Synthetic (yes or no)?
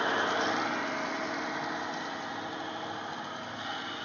no